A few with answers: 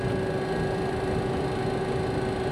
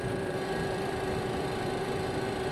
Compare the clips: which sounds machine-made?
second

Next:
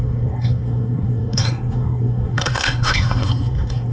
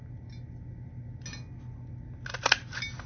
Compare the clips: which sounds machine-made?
first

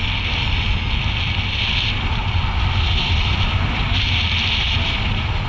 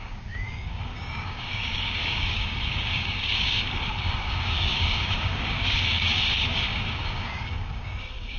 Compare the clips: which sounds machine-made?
second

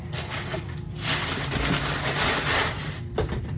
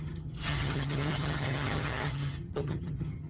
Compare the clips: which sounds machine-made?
second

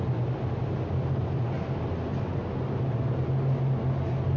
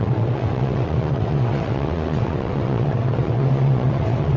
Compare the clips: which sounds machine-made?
second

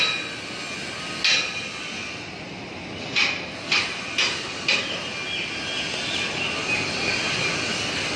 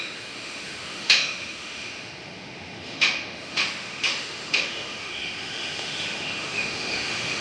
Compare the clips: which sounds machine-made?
second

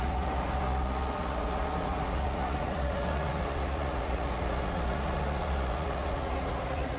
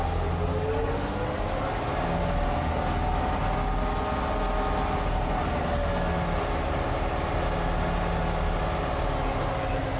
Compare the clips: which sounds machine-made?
first